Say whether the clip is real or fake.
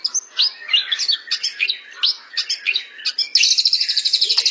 real